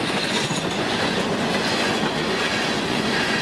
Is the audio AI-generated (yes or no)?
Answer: yes